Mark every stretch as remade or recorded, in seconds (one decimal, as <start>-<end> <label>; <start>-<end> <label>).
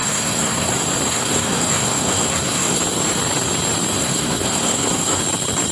0.0-0.7 remade; 0.7-1.1 recorded; 1.1-2.8 remade; 2.8-4.0 recorded; 4.0-5.2 remade; 5.2-5.7 recorded